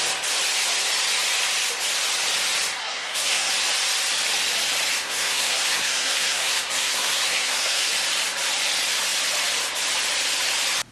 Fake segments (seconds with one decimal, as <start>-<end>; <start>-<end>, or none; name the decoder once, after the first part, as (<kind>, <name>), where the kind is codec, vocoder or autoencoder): 2.8-3.5 (codec, SNAC); 5.0-7.9